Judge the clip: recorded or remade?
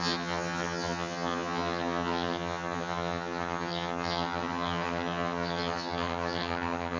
remade